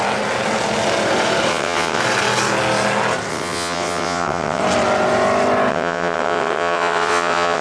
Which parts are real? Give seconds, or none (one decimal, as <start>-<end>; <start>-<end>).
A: 0.0-1.5; 2.0-3.3; 4.6-5.7